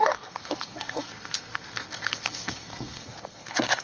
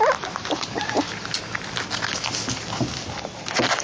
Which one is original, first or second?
second